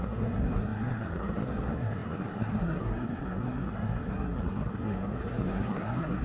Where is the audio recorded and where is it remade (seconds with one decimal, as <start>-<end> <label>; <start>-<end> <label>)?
0.0-6.2 remade